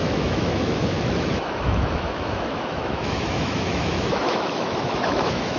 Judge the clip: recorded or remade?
remade